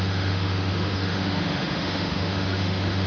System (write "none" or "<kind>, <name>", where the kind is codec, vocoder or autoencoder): autoencoder, DAC-VAE